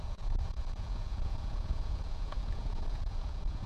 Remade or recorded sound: remade